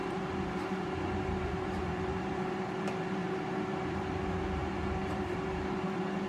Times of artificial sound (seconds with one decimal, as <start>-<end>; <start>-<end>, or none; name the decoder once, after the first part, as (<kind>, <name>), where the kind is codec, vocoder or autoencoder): 0.0-2.5 (vocoder, BigVGAN v2); 4.6-5.6